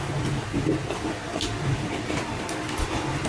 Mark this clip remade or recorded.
recorded